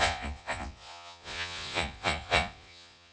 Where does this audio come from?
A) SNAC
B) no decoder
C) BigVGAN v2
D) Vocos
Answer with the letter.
D